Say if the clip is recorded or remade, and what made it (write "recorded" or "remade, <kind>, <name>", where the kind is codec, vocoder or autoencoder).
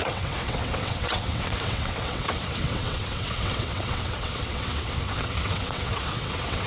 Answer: remade, vocoder, WaveNeXt